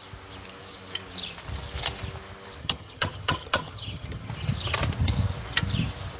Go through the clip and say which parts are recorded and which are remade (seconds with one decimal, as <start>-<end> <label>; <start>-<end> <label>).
0.0-2.6 recorded; 2.6-4.3 remade; 4.3-6.2 recorded